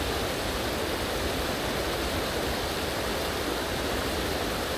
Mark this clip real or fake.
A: real